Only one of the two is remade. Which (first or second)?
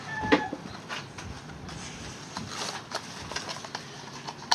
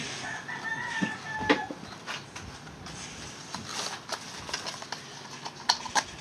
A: first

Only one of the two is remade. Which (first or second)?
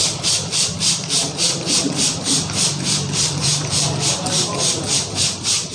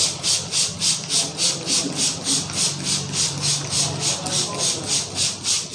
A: first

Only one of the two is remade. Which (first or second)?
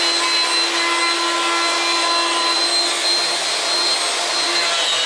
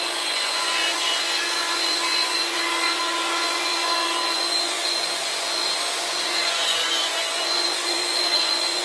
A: second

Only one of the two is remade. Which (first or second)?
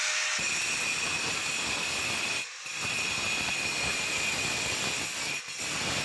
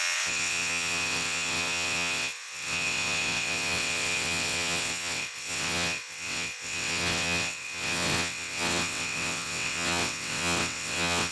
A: second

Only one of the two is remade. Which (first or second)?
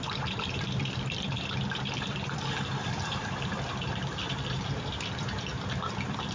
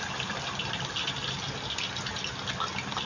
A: first